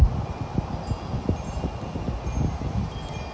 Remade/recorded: recorded